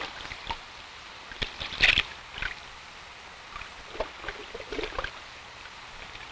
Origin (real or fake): real